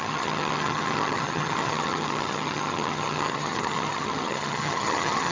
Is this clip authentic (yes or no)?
no